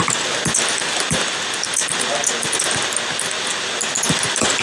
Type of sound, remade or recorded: recorded